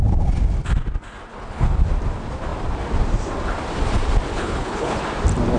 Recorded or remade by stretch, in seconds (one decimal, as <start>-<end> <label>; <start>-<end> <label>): 0.0-1.3 recorded; 1.3-1.8 remade; 1.8-4.3 recorded; 4.3-5.0 remade; 5.0-5.6 recorded